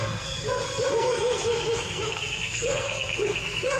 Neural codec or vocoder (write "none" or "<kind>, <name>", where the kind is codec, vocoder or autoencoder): codec, SNAC